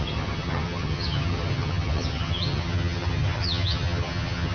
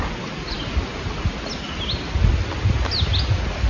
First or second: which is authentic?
second